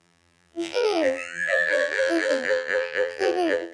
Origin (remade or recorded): remade